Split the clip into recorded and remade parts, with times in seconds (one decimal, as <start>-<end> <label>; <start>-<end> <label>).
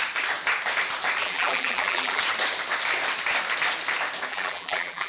0.0-1.2 recorded; 1.2-2.2 remade; 2.2-4.3 recorded; 4.3-5.1 remade